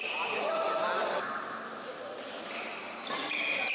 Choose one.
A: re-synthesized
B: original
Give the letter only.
B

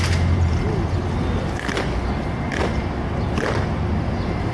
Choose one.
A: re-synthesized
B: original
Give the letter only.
B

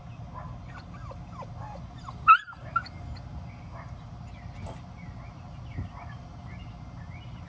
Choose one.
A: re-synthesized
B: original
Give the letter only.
B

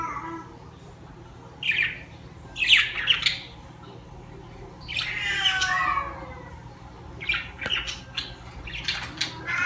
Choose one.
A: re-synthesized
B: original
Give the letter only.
B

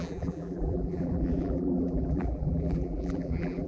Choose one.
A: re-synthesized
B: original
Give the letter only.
A